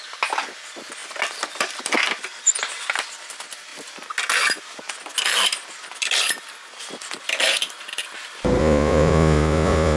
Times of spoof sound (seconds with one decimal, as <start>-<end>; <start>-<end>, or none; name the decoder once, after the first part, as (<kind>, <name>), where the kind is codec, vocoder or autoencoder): 8.6-10.0 (vocoder, Vocos)